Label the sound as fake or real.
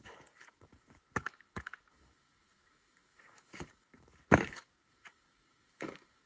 fake